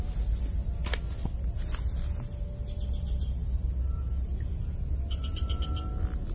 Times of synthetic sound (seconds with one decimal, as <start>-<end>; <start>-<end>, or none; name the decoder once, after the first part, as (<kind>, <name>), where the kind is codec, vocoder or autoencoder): none